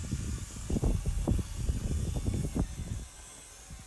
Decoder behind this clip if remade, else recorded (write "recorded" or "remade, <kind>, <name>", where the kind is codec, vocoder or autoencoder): recorded